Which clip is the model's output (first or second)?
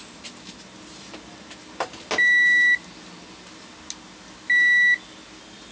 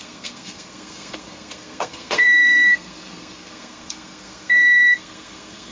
second